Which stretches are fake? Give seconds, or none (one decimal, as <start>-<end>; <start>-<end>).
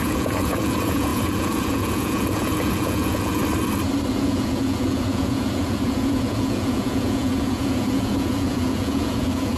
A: 0.0-3.4; 4.1-9.6